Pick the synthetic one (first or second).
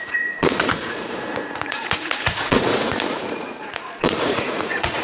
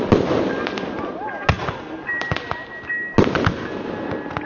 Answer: first